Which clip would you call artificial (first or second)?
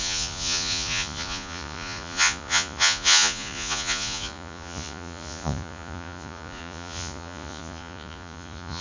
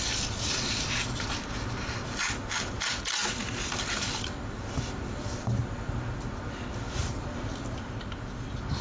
first